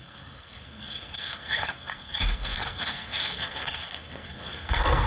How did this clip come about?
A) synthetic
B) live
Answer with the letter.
A